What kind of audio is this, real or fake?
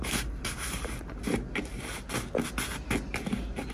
real